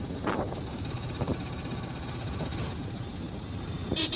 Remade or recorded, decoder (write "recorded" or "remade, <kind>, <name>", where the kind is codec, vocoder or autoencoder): remade, vocoder, BigVGAN v2